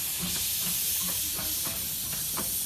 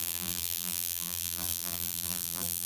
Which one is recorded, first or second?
first